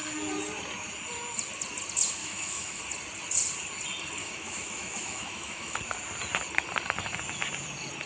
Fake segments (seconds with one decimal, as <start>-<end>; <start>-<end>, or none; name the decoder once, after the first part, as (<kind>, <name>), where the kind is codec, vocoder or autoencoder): 2.2-2.8 (autoencoder, DAC-VAE); 4.2-5.8